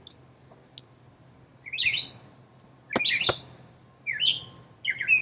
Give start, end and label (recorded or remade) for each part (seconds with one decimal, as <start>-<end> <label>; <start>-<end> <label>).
0.0-5.2 recorded